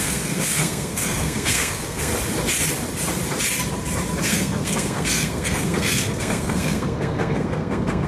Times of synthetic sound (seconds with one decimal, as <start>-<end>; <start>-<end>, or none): 0.0-2.1; 4.2-8.1